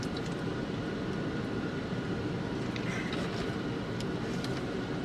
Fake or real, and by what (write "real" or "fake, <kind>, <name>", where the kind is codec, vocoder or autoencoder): real